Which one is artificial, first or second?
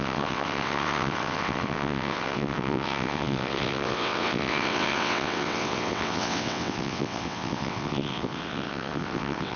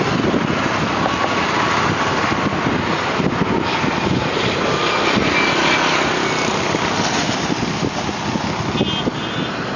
first